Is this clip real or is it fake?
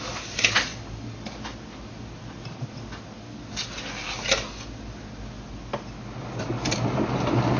real